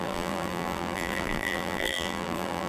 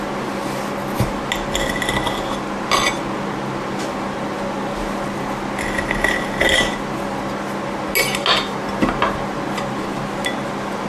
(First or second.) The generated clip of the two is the first